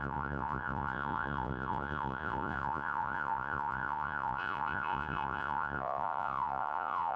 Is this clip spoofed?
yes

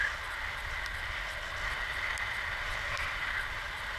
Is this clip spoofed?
no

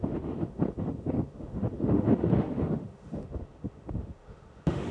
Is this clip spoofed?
yes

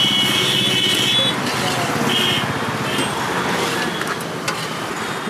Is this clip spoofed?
no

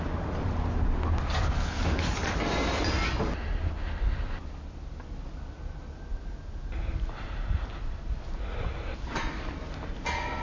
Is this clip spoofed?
no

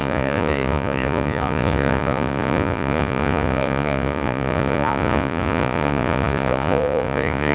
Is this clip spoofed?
yes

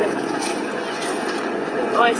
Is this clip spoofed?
yes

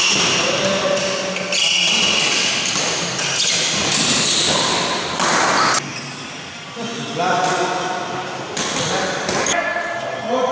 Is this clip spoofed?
no